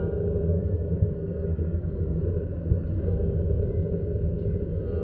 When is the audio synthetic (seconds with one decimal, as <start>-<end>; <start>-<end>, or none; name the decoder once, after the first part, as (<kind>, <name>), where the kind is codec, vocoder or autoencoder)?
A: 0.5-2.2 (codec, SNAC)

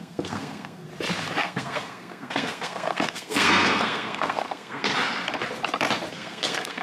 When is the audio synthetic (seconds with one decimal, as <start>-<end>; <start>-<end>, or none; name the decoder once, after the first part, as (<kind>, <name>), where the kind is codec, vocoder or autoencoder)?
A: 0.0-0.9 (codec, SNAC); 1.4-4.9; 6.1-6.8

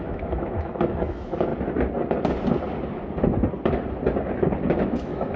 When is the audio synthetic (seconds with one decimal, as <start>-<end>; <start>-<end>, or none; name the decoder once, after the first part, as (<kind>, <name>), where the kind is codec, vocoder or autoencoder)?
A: 0.0-1.5 (autoencoder, DAC-VAE); 4.7-5.4